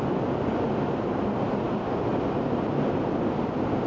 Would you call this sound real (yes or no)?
yes